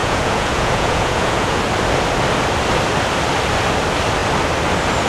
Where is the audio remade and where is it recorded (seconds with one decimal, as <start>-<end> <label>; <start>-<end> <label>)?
0.0-1.6 remade; 1.6-5.1 recorded